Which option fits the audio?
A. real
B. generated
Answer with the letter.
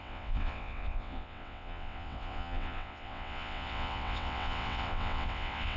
B